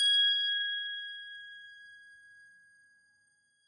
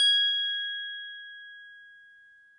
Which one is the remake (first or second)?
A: first